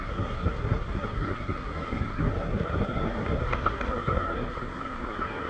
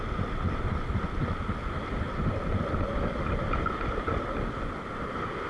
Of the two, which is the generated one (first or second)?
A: first